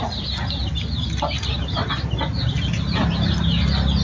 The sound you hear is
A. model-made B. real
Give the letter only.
B